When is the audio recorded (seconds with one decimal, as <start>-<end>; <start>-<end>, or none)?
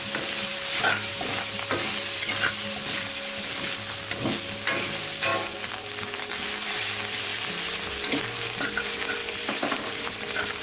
0.0-5.3; 7.4-9.2; 10.1-10.6